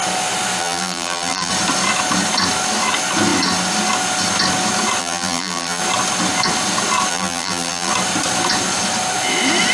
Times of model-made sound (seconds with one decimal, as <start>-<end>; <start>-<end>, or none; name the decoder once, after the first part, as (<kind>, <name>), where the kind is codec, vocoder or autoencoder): 0.6-1.5 (vocoder, BigVGAN v2); 5.0-5.8; 7.1-7.9